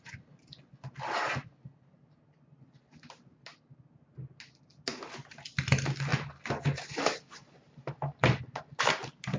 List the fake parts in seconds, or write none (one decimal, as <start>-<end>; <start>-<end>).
none